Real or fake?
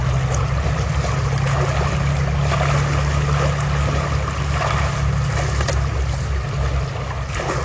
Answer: real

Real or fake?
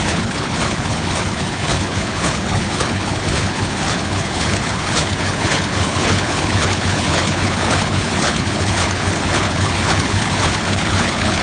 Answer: fake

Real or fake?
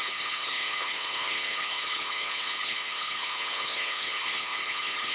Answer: fake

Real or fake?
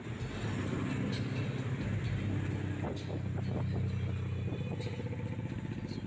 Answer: real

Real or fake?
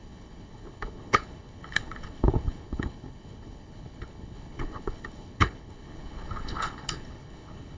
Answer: fake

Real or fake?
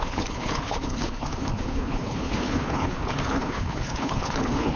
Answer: fake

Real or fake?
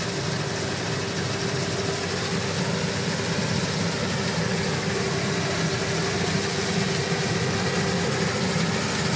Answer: real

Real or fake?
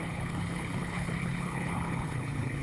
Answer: fake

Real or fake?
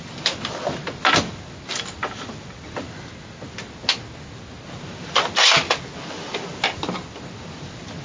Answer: real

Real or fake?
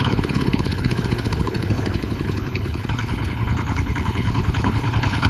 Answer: fake